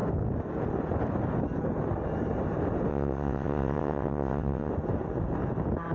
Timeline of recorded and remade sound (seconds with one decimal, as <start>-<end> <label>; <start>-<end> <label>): 0.0-2.9 recorded; 2.9-4.7 remade; 4.7-5.9 recorded